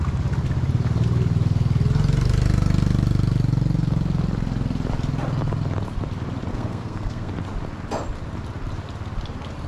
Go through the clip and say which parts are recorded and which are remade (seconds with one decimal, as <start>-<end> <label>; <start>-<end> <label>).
0.0-6.5 recorded; 6.5-7.3 remade; 7.3-9.7 recorded